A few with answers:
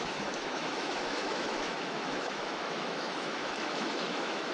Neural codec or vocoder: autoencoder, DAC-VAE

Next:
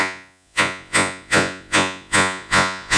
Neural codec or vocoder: vocoder, Vocos